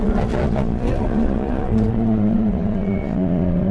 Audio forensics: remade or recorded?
remade